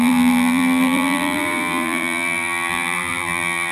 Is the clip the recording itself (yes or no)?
no